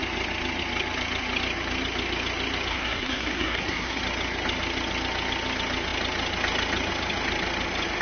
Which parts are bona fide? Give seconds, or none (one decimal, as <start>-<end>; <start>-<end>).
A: 0.0-2.7; 4.0-8.0